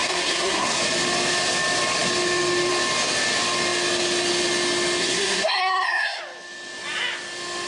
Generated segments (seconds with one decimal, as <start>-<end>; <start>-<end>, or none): 0.0-0.8; 5.0-6.2

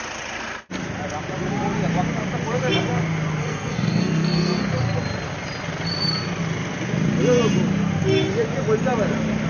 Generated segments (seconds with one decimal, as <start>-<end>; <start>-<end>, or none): 3.4-4.6

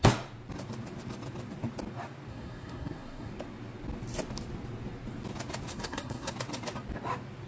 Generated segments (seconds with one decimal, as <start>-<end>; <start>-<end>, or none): 2.3-3.3; 5.7-6.3

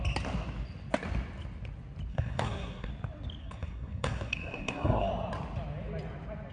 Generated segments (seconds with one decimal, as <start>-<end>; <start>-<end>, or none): 2.1-2.9; 3.4-5.1

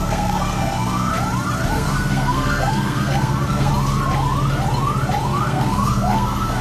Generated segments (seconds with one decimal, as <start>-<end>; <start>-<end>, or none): 0.0-1.1; 1.7-3.7; 5.4-6.6

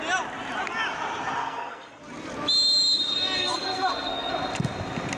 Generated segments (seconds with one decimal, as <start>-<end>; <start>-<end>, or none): 1.4-2.0; 3.4-4.3